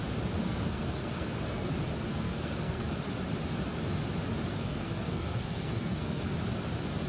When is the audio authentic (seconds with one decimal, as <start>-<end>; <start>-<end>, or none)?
0.0-0.4; 1.7-2.1; 3.0-4.5; 6.2-7.1